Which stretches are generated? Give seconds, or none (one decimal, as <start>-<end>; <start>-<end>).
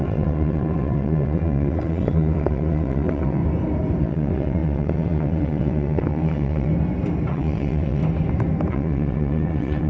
0.0-3.4; 4.0-6.7; 7.3-8.0; 8.7-9.9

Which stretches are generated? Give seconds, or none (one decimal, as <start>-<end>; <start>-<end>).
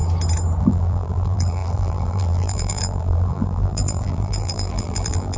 0.6-5.4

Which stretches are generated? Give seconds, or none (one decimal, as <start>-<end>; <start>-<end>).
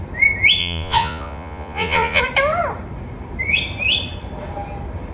0.6-2.2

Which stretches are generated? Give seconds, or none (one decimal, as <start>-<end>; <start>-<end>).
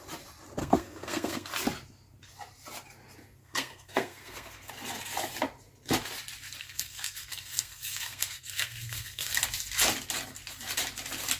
0.6-1.5; 3.4-4.7; 6.6-9.3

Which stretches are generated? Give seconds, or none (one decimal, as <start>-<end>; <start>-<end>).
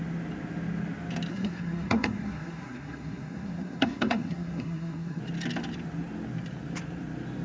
1.3-5.2